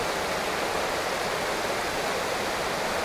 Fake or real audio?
real